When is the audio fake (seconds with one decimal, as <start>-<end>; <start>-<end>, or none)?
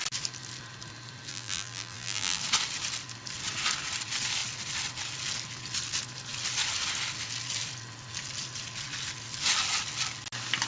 1.3-2.4